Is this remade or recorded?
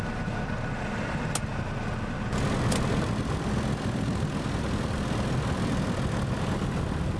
recorded